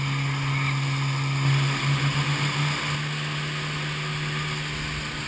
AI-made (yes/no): no